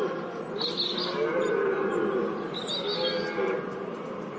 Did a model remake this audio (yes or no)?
no